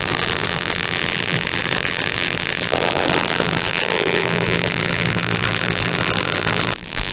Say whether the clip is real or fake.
fake